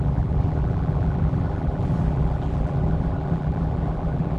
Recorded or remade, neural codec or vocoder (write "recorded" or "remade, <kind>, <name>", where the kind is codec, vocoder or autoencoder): remade, vocoder, BigVGAN v2